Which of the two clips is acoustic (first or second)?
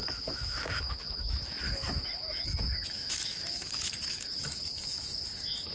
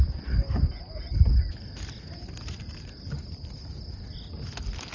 second